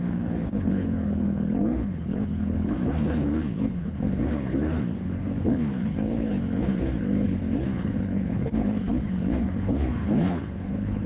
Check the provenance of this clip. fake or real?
fake